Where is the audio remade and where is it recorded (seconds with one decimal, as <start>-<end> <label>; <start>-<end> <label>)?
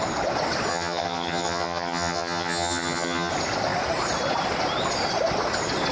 0.0-0.7 recorded; 0.7-3.3 remade; 3.3-5.9 recorded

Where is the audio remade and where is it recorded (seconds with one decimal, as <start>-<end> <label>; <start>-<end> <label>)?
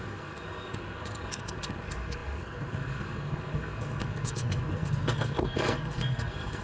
0.0-6.6 remade